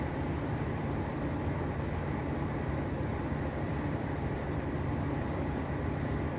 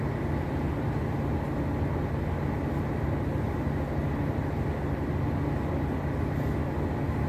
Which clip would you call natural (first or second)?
second